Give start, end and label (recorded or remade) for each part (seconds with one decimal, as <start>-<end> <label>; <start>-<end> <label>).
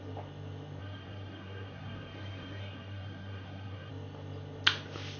0.0-0.8 recorded; 0.8-3.9 remade; 3.9-5.2 recorded